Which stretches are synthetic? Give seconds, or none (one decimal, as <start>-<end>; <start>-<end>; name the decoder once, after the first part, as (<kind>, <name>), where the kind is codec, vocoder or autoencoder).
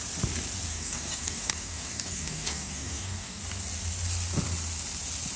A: 0.7-3.4 (codec, DAC)